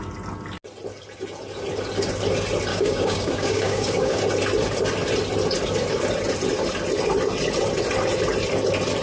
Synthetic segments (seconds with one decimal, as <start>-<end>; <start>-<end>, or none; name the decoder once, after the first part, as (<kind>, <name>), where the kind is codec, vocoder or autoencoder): 2.7-4.2 (codec, DAC)